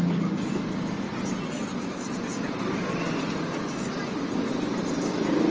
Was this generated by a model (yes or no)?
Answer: no